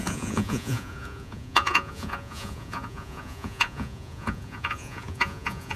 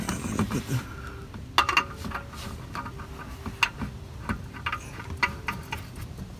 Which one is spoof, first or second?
first